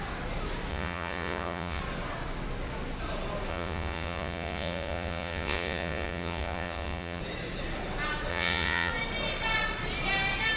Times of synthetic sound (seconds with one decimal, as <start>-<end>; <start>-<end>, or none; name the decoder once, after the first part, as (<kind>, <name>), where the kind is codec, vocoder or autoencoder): 0.7-1.8 (vocoder, Vocos); 3.5-7.2; 8.3-8.9